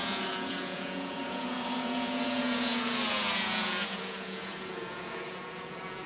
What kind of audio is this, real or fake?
fake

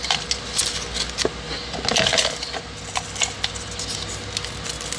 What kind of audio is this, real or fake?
real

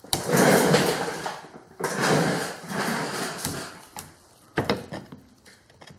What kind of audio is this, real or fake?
fake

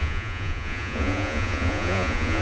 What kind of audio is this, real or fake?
fake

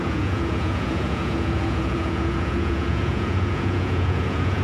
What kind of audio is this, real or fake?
fake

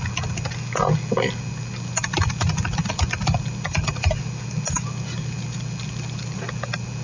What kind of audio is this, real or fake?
real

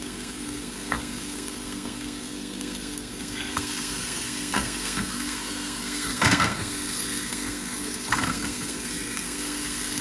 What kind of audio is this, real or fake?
fake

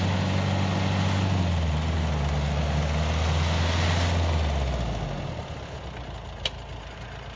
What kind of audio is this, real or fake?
real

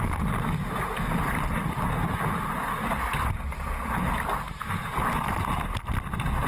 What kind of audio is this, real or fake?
real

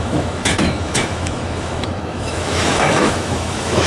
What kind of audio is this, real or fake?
fake